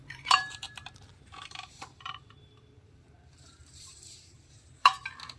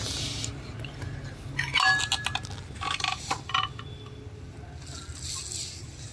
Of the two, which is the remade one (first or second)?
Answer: first